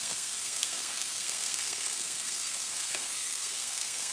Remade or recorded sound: remade